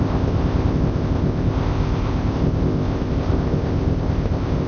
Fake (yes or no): yes